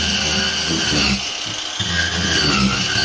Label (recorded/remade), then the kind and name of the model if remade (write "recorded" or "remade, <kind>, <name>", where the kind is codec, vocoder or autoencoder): recorded